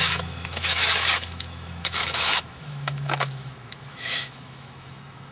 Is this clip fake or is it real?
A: fake